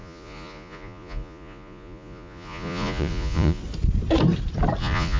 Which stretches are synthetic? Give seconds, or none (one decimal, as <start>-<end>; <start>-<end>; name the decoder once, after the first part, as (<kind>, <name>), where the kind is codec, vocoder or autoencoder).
0.0-3.6 (vocoder, Vocos); 4.8-5.2